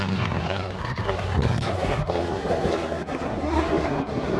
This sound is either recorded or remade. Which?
remade